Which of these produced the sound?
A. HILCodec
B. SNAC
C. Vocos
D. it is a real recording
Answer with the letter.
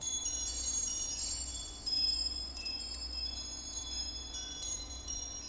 C